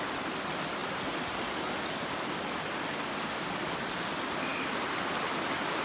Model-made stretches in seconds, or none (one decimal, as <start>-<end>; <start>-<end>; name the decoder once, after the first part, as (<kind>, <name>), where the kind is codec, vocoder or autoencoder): none